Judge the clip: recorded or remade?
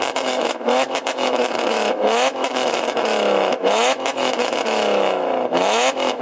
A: remade